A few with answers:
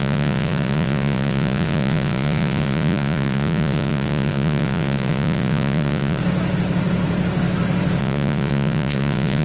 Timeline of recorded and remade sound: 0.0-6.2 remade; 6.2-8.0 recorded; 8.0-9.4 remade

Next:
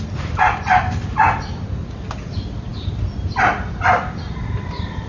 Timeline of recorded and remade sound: 0.0-5.1 recorded

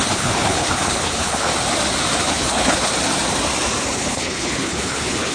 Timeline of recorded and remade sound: 0.0-1.5 remade; 1.5-2.3 recorded; 2.3-2.9 remade; 2.9-4.0 recorded; 4.0-5.3 remade

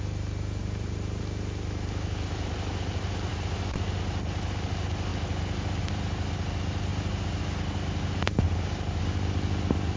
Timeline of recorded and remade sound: 0.0-0.6 recorded; 0.6-1.2 remade; 1.2-6.9 recorded; 6.9-7.4 remade; 7.4-10.0 recorded

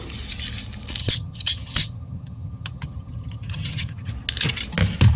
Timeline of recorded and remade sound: 0.0-1.0 recorded; 1.0-4.1 remade; 4.1-5.2 recorded

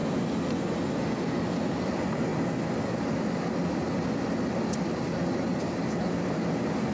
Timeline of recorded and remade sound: 0.0-6.9 recorded

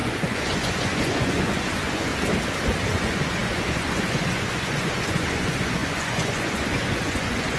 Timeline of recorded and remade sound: 0.0-2.1 remade; 2.1-2.9 recorded; 2.9-7.6 remade

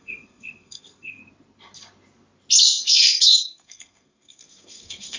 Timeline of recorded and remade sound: 0.0-1.2 remade; 1.2-2.6 recorded; 2.6-5.2 remade